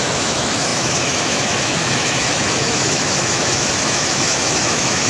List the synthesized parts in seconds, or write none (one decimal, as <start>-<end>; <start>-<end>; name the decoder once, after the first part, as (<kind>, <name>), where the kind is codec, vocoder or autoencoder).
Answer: 0.0-5.1 (autoencoder, DAC-VAE)